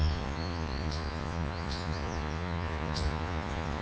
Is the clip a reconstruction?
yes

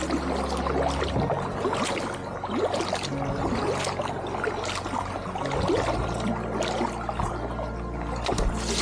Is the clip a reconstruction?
no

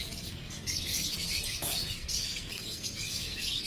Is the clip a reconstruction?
yes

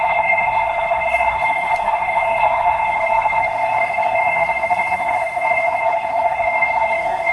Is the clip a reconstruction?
yes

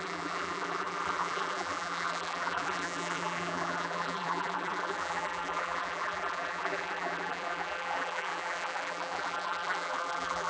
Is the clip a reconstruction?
yes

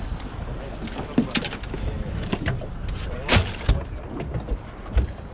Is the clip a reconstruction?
no